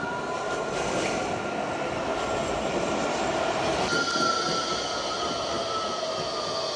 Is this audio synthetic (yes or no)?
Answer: no